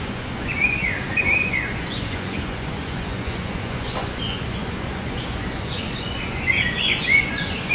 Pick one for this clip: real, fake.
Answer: fake